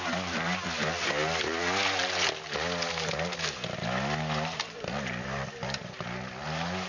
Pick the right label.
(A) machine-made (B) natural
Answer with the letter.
B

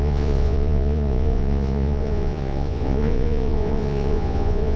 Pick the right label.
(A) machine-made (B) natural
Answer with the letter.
A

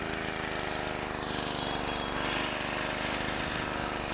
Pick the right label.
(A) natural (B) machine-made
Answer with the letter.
A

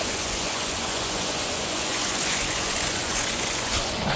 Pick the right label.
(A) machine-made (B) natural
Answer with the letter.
A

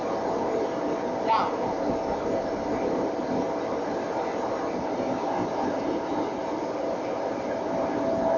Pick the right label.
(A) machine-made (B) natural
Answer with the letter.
B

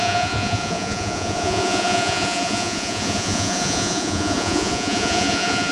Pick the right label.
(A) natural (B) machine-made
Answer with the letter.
B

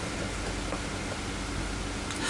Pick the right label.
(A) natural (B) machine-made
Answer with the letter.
A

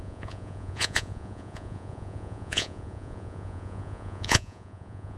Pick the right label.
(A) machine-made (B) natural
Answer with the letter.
A